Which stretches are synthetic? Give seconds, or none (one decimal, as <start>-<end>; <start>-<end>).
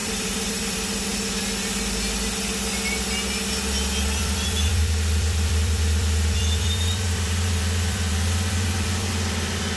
0.0-1.1; 4.0-9.8